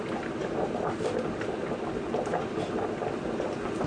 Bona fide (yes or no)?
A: yes